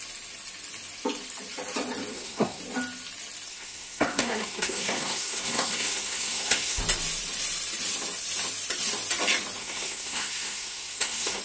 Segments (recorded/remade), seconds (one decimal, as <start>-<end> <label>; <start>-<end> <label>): 0.0-2.1 recorded; 2.1-2.6 remade; 2.6-3.5 recorded; 3.5-6.8 remade; 6.8-9.6 recorded; 9.6-11.4 remade